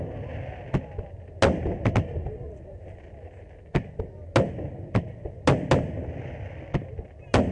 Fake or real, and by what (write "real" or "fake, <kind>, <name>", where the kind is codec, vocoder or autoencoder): real